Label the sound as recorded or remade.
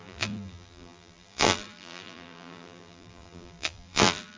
remade